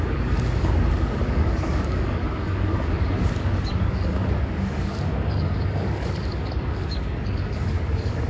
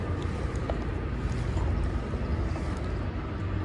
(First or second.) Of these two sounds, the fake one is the first